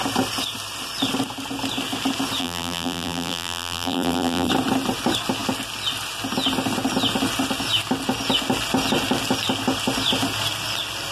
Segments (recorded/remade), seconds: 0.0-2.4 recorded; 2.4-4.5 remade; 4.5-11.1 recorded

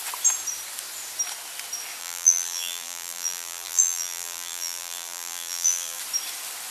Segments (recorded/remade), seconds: 0.0-2.0 recorded; 2.0-6.0 remade; 6.0-6.7 recorded